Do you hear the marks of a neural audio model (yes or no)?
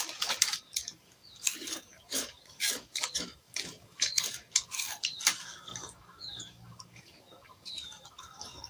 yes